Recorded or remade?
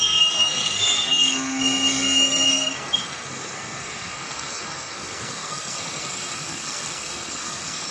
remade